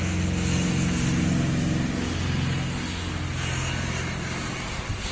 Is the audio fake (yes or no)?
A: no